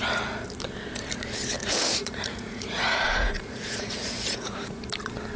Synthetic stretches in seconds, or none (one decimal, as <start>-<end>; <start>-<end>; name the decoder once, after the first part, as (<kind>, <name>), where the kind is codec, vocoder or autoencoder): 1.6-4.8 (vocoder, Vocos)